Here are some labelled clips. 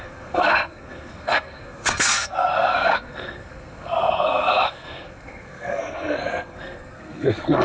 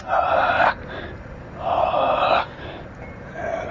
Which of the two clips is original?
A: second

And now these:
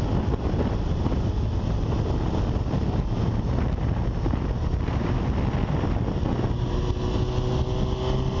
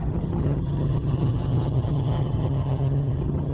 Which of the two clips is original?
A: first